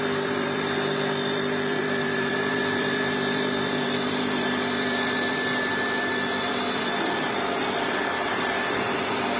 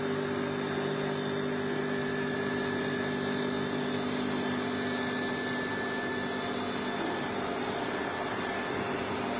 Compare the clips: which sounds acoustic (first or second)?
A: second